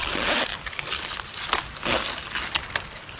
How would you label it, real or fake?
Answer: real